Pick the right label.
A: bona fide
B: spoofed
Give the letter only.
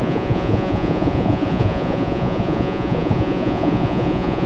B